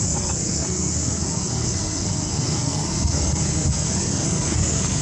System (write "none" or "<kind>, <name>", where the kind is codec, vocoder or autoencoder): codec, SNAC